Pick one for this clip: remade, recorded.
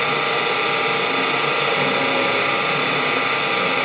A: recorded